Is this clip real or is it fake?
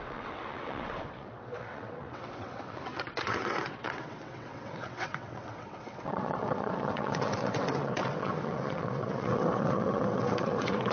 fake